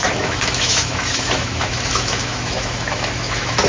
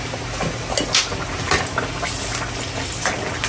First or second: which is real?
second